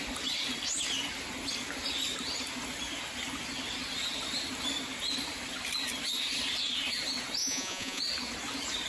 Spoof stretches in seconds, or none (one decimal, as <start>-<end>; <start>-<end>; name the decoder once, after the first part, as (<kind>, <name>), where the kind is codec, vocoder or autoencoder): 7.4-8.0 (vocoder, Vocos)